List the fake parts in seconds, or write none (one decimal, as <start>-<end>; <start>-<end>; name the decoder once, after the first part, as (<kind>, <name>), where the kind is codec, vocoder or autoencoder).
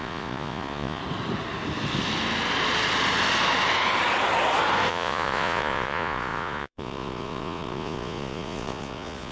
0.0-1.0 (vocoder, Vocos); 4.9-9.3